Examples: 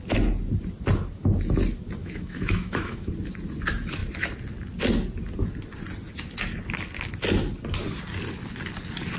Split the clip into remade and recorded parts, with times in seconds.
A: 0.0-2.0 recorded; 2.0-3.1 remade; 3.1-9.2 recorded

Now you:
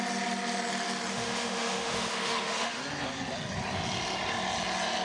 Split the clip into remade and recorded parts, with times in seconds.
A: 0.0-1.1 recorded; 1.1-2.8 remade; 2.8-5.0 recorded

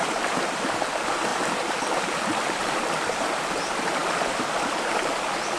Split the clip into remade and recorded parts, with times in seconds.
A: 0.0-5.6 recorded

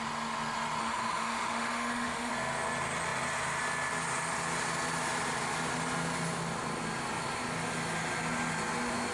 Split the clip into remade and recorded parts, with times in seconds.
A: 0.0-0.8 recorded; 0.8-2.3 remade; 2.3-9.1 recorded

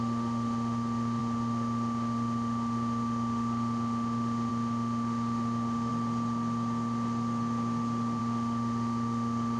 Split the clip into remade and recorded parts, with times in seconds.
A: 0.0-5.9 remade; 5.9-8.2 recorded; 8.2-9.6 remade

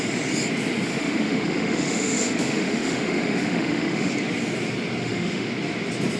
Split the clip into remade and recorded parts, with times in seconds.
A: 0.0-0.9 recorded; 0.9-4.1 remade; 4.1-5.0 recorded; 5.0-5.5 remade; 5.5-6.2 recorded